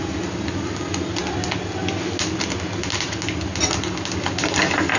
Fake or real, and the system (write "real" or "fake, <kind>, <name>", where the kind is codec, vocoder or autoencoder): real